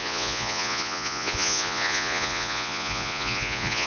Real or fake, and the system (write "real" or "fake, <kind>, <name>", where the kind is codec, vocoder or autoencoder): fake, vocoder, Vocos